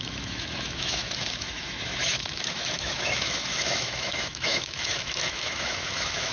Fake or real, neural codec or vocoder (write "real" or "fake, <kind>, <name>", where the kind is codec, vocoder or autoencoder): fake, autoencoder, DAC-VAE